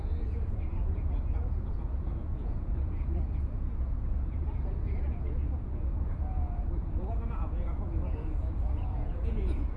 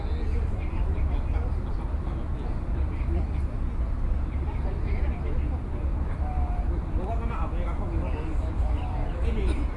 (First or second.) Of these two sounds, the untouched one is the second